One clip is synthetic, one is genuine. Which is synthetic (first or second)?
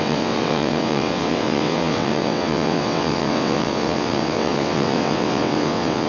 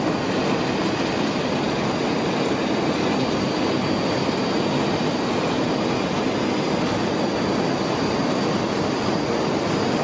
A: first